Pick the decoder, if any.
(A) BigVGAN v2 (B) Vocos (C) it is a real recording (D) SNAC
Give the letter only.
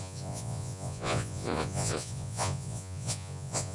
B